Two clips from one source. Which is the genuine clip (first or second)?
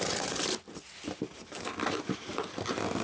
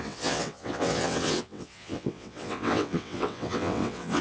first